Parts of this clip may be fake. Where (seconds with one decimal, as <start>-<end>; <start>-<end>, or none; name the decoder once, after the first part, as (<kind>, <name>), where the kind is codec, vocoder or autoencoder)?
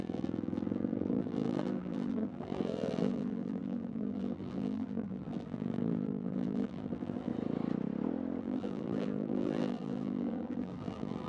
0.0-7.3 (vocoder, BigVGAN v2); 8.4-11.3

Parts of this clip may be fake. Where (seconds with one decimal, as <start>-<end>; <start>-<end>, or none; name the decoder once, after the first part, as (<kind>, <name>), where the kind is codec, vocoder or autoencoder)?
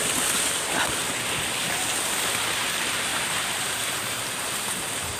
3.1-4.8 (vocoder, BigVGAN v2)